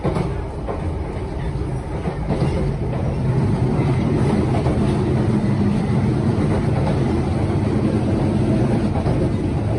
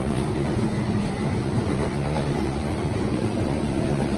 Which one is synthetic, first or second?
second